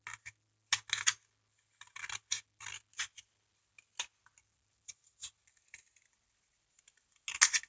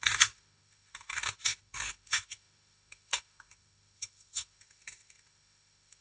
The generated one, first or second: second